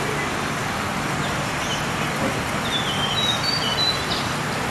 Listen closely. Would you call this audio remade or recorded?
recorded